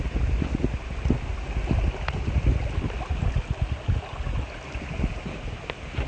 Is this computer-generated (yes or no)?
no